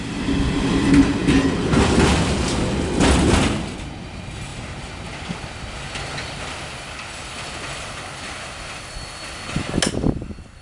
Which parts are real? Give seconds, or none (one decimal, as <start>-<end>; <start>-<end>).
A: 0.0-10.6

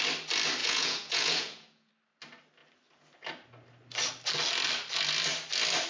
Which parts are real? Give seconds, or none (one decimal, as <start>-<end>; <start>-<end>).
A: 0.0-0.6; 1.9-5.9

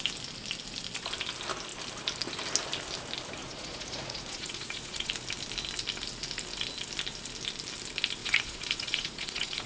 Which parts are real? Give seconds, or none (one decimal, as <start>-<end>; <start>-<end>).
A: 0.0-3.4; 5.1-8.2

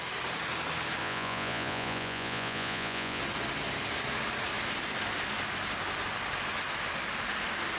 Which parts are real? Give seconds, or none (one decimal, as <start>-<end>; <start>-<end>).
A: 0.0-1.0; 3.2-7.8

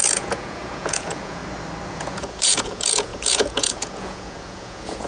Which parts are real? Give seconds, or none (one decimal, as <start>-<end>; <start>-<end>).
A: 1.4-1.9

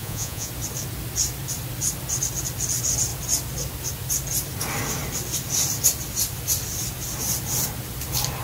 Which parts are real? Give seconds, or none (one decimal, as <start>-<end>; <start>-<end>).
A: 0.5-8.4

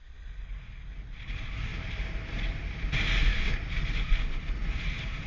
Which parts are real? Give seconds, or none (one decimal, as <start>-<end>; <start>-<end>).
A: 0.0-5.3